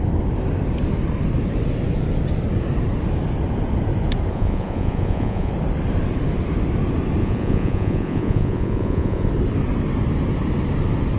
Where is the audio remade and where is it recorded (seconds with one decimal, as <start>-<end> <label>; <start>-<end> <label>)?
0.0-4.3 recorded; 4.3-5.5 remade; 5.5-7.2 recorded; 7.2-9.3 remade; 9.3-11.2 recorded